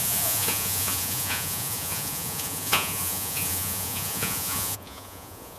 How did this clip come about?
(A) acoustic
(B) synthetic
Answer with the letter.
B